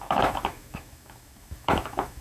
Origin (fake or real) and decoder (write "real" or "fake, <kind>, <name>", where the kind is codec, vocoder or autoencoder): fake, autoencoder, DAC-VAE